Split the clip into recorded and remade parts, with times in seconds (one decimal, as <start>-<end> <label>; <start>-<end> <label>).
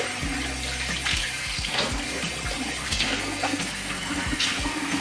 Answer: 0.0-1.1 recorded; 1.1-2.2 remade; 2.2-2.8 recorded; 2.8-5.0 remade